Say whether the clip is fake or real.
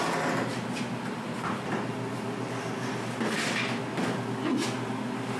real